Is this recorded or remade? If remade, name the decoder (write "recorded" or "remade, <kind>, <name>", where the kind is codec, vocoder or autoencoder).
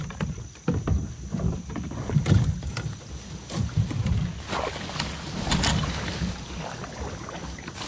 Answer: recorded